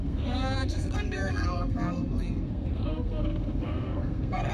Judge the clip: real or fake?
fake